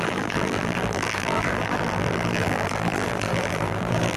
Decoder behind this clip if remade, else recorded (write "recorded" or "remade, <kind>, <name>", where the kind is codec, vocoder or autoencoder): remade, vocoder, BigVGAN v2